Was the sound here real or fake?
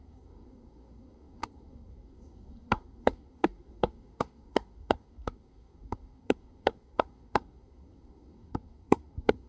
fake